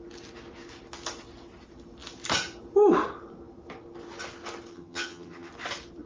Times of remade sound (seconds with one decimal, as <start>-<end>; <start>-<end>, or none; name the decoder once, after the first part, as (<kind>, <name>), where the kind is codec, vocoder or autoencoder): 4.7-5.5 (vocoder, HiFi-GAN)